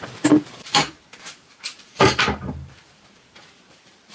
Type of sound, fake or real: fake